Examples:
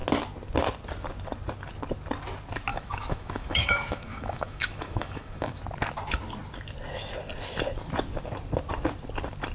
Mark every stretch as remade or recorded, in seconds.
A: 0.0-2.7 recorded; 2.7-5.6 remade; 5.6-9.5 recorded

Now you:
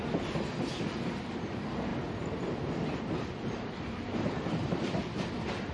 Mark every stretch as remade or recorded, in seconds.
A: 0.0-1.9 recorded; 1.9-5.3 remade; 5.3-5.7 recorded

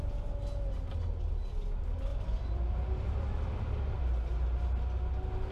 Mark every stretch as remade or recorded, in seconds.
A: 0.0-2.1 recorded; 2.1-3.5 remade; 3.5-5.5 recorded

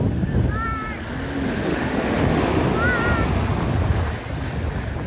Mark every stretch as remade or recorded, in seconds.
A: 0.0-1.7 recorded; 1.7-2.4 remade; 2.4-5.1 recorded

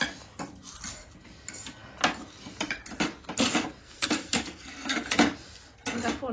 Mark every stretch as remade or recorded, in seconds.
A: 0.0-3.8 recorded; 3.8-5.1 remade; 5.1-6.3 recorded